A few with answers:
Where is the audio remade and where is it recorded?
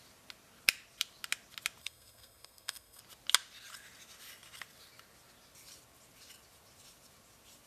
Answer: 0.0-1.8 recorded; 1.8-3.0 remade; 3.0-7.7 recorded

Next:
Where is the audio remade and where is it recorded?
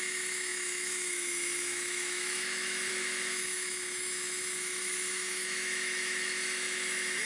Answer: 0.0-7.3 remade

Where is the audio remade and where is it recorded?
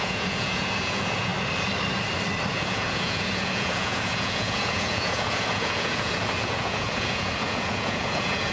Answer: 0.0-1.3 remade; 1.3-2.5 recorded; 2.5-8.5 remade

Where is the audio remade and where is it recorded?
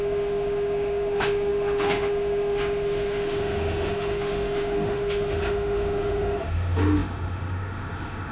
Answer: 0.0-8.3 remade